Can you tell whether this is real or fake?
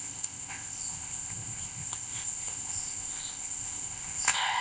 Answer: fake